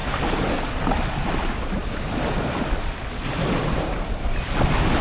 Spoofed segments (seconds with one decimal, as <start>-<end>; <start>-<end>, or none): none